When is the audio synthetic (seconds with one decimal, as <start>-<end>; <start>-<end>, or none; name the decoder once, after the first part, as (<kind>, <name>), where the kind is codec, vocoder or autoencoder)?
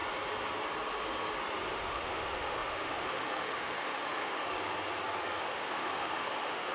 1.7-4.5 (autoencoder, DAC-VAE); 5.4-6.7